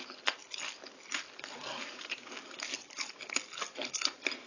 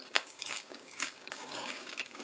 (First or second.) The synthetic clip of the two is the second